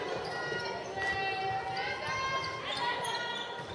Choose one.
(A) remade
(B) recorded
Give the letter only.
B